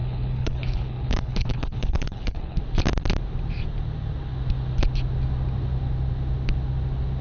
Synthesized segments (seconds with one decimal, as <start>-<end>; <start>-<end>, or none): 0.0-2.6